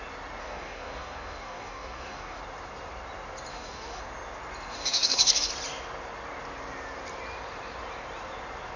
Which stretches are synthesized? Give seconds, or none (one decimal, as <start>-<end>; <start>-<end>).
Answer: 0.4-2.4; 3.5-4.0; 4.7-5.5